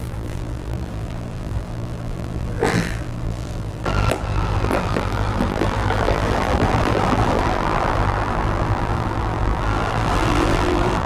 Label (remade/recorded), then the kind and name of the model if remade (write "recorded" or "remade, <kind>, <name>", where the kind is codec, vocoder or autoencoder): remade, vocoder, BigVGAN v2